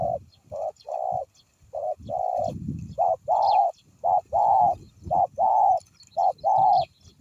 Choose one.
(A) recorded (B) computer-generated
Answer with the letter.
B